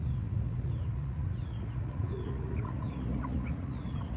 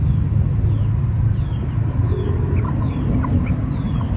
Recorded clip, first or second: second